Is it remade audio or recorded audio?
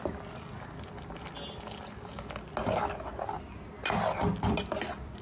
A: recorded